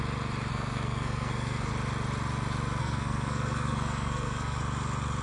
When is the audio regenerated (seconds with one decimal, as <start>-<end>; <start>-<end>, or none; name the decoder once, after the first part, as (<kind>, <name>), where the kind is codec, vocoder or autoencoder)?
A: 0.5-1.7 (codec, SNAC); 2.8-4.6